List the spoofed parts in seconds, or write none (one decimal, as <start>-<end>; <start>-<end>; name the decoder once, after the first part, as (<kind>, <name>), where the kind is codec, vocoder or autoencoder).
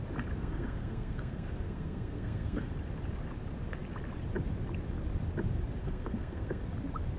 0.4-2.7 (codec, SNAC); 5.8-6.6